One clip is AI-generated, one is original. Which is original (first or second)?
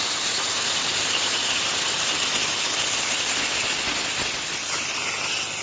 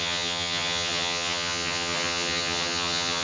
first